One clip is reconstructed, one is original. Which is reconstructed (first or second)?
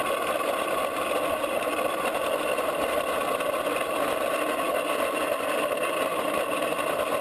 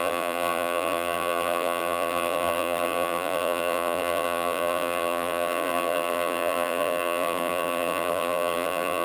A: second